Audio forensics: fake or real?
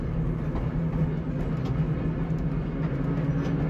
real